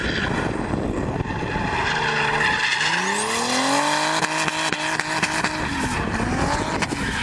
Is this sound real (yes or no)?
yes